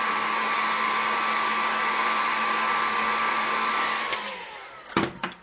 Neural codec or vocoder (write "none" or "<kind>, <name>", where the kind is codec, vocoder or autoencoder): none